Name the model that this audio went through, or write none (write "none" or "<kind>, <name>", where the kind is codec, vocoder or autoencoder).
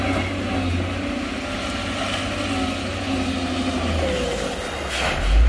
none